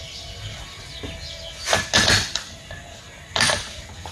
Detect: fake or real real